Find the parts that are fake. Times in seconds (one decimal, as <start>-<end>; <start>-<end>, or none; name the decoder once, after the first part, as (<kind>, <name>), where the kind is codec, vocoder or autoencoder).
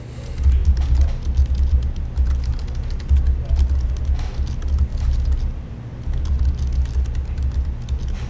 none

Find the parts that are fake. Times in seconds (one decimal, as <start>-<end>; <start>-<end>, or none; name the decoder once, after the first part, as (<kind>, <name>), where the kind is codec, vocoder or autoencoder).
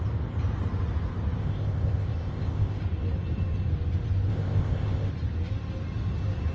1.4-2.8 (codec, ZipCodec); 4.3-5.1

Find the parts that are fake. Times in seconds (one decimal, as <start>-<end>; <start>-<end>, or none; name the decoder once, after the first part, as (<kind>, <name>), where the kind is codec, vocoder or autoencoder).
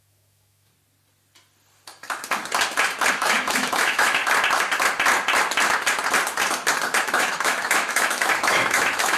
0.0-0.7 (autoencoder, DAC-VAE); 3.1-4.2; 7.0-9.2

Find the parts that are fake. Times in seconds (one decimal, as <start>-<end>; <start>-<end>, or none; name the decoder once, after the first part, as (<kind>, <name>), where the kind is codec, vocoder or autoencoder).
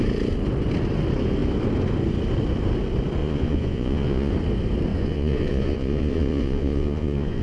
3.2-4.3 (vocoder, Vocos); 4.9-7.4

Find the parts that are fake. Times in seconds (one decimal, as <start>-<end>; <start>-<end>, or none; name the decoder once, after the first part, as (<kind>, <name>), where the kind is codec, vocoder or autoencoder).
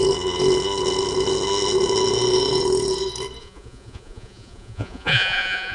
3.4-5.7 (vocoder, Vocos)